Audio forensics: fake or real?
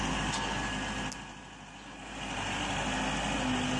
real